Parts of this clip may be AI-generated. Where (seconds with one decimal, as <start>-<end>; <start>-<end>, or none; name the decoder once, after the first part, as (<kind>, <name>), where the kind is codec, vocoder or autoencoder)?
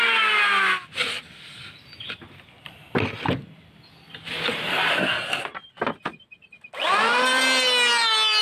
none